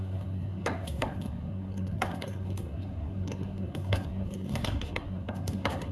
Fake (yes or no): yes